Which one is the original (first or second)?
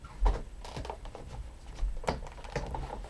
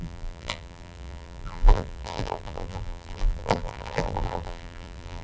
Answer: first